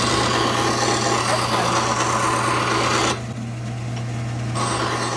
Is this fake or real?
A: real